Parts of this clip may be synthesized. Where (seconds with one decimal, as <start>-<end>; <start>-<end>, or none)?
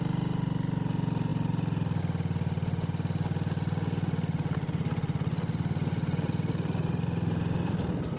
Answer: none